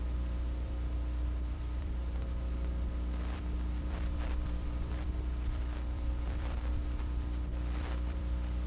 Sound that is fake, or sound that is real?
fake